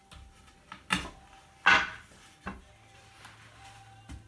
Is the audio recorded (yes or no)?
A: yes